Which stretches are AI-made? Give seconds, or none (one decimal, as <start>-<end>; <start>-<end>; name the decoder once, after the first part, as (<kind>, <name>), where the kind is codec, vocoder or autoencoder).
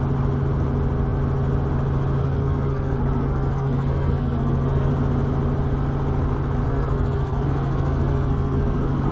2.2-4.9 (codec, SNAC); 6.7-9.1